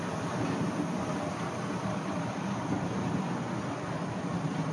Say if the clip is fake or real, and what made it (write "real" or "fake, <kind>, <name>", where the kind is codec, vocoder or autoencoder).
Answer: real